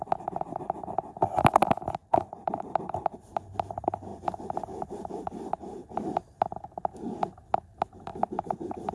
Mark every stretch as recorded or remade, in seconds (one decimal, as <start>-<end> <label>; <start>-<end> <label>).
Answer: 0.0-2.0 recorded; 2.0-3.5 remade; 3.5-8.9 recorded

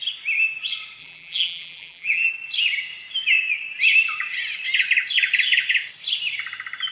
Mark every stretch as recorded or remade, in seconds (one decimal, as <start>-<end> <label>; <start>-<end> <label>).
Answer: 0.0-1.0 recorded; 1.0-2.3 remade; 2.3-6.9 recorded

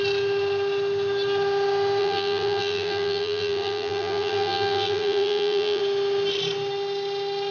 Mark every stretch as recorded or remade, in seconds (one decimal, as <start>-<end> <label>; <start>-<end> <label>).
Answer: 0.0-2.0 recorded; 2.0-5.8 remade; 5.8-7.5 recorded

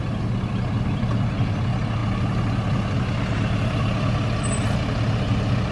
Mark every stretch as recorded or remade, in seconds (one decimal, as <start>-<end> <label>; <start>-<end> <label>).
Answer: 0.0-5.7 recorded

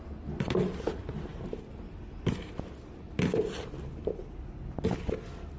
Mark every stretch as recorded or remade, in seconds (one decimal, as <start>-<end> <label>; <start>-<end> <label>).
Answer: 0.0-5.6 recorded

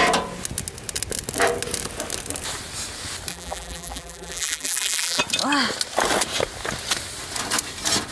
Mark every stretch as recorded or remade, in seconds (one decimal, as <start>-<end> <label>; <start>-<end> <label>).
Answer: 0.0-3.3 recorded; 3.3-5.2 remade; 5.2-8.1 recorded